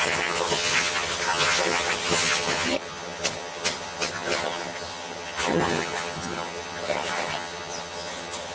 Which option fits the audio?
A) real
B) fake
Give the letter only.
B